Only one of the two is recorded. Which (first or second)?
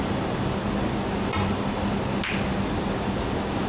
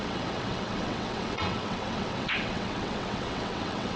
first